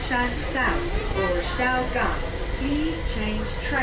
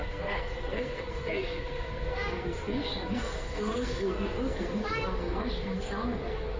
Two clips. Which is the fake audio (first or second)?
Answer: second